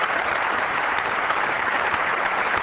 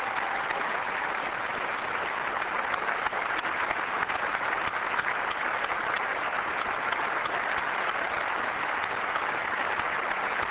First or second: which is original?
second